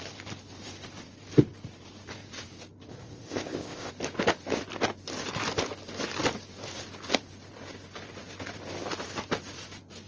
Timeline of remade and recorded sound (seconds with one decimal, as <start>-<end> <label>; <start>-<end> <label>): 0.0-2.9 recorded; 2.9-3.9 remade; 3.9-10.1 recorded